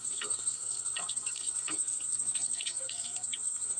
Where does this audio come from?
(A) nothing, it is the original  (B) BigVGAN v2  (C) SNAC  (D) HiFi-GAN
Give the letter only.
C